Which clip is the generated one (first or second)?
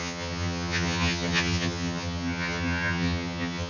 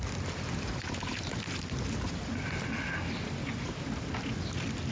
first